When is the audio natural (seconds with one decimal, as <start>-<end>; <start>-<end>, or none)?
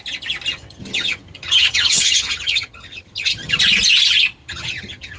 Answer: 0.0-0.5; 3.6-4.4